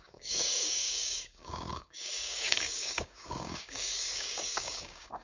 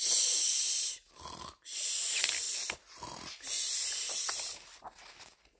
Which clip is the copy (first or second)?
first